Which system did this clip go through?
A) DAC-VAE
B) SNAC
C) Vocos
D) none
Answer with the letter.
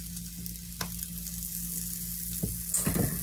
D